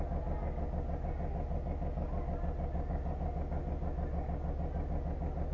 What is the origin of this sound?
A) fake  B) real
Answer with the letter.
B